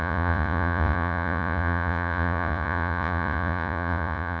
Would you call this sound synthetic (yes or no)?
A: yes